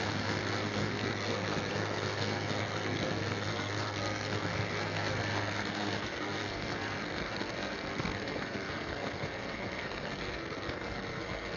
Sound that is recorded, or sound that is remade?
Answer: remade